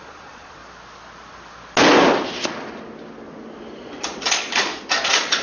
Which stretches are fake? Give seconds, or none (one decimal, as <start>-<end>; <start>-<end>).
0.0-0.6; 3.8-5.4